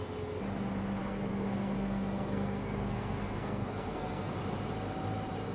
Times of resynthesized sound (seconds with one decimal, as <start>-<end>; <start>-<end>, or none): 1.0-4.3